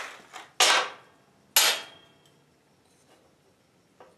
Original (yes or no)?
yes